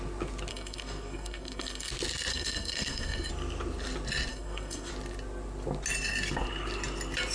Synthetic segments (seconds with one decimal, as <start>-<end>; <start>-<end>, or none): 0.5-1.9; 2.3-3.3; 4.3-4.9